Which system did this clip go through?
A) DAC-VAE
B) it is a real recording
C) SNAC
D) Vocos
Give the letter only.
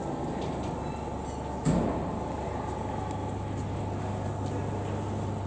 B